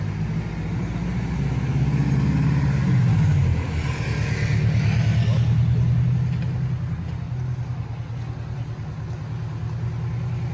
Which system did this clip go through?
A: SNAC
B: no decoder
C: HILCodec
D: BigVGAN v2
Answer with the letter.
B